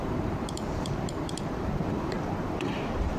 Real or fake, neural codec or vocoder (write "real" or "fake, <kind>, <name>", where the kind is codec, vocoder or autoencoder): fake, vocoder, BigVGAN v2